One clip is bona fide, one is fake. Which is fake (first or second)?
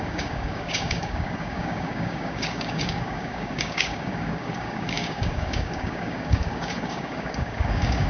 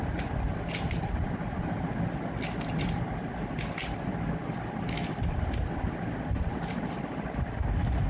first